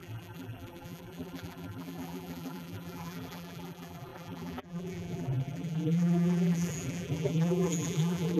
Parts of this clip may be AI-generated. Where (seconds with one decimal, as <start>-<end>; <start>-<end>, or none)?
0.0-8.4